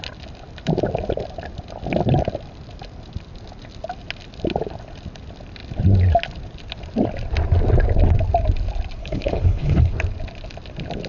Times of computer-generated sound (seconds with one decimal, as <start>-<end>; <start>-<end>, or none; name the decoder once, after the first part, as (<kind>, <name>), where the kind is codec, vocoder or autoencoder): 9.0-9.9 (codec, HILCodec)